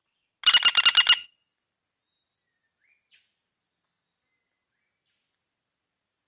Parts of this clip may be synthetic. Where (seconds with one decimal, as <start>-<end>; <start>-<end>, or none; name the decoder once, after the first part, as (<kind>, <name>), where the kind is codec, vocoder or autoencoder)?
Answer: none